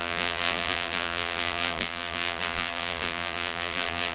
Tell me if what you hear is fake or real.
fake